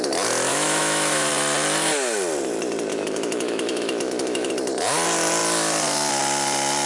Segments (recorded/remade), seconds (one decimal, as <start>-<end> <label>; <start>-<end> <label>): 0.0-0.5 recorded; 0.5-1.3 remade; 1.3-2.9 recorded; 2.9-4.5 remade; 4.5-6.9 recorded